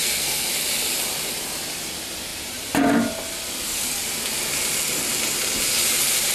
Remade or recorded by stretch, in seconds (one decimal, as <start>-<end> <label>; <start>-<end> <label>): 0.0-0.5 remade; 0.5-6.3 recorded